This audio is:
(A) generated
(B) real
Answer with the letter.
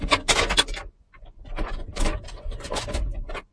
A